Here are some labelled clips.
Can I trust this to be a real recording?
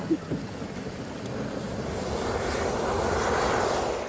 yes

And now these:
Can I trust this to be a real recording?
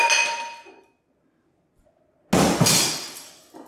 yes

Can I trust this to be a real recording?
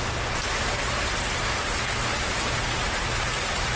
yes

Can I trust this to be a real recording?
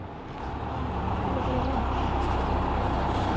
yes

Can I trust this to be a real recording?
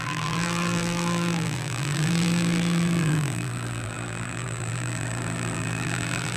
no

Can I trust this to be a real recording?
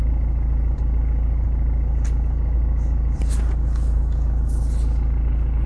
yes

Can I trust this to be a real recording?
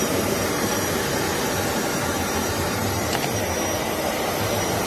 no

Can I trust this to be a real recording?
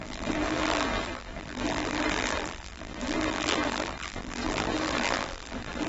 no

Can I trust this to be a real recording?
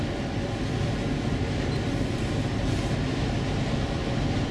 yes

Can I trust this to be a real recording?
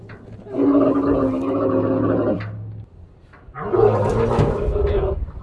yes